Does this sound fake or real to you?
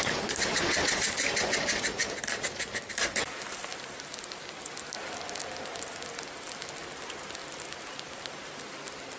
real